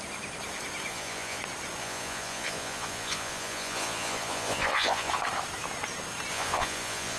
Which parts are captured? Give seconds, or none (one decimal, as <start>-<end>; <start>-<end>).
0.0-0.9; 1.4-1.8; 5.1-6.3